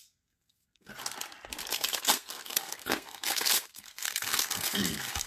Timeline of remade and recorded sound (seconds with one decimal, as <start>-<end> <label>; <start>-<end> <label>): 0.0-0.9 remade; 0.9-1.7 recorded; 1.7-5.3 remade